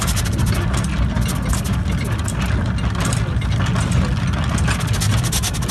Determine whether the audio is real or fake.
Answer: real